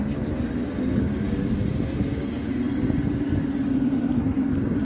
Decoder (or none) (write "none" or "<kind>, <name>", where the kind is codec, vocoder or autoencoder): none